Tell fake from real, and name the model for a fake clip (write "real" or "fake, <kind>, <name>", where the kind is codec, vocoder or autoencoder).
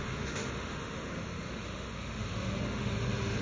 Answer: fake, autoencoder, DAC-VAE